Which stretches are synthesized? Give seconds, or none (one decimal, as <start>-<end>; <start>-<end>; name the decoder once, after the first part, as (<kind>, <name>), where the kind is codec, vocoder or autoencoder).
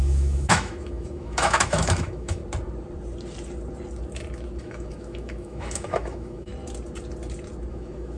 0.0-2.4 (autoencoder, DAC-VAE); 4.6-6.5; 7.7-8.2